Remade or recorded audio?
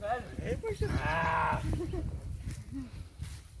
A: recorded